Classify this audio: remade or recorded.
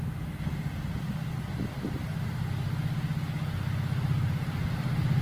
recorded